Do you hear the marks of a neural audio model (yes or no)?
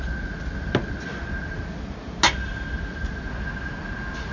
no